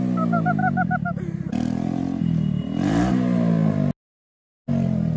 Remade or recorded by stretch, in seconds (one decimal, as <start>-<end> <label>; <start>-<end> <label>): 0.0-5.2 recorded